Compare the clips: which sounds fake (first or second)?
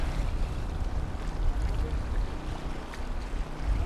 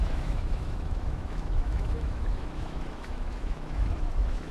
second